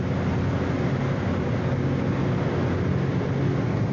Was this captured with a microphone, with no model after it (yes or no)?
yes